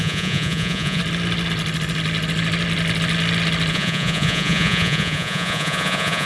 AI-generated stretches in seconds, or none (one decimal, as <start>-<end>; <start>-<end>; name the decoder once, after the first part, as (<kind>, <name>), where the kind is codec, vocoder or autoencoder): 0.0-1.0 (vocoder, Vocos); 3.7-6.3

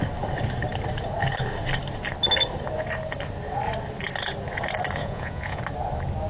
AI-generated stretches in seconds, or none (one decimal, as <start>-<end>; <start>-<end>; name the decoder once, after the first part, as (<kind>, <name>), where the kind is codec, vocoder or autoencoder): 5.0-5.6 (vocoder, Vocos)

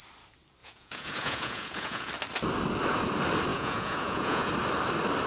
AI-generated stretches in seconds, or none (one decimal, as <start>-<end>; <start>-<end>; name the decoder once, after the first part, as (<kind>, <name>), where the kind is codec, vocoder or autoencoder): 0.6-2.1 (vocoder, Vocos); 3.5-4.5